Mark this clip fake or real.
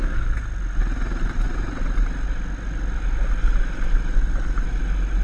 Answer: real